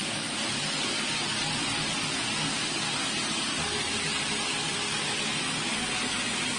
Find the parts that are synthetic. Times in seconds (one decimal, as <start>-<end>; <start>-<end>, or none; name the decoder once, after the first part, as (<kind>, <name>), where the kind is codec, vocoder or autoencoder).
0.0-0.8 (vocoder, BigVGAN v2); 1.3-4.7